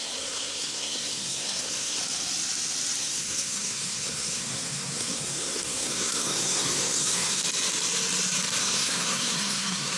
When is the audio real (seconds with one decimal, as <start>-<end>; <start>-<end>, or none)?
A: 2.0-3.0; 7.4-8.6